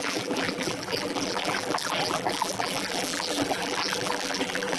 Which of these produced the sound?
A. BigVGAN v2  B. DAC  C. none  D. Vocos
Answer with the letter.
A